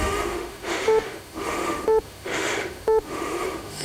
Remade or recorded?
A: remade